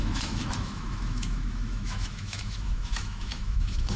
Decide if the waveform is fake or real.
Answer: fake